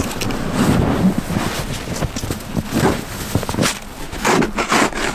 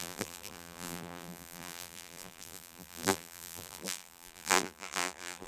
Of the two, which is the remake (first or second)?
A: second